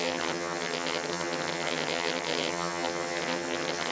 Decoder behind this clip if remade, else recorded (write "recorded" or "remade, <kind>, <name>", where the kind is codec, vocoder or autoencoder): remade, vocoder, HiFi-GAN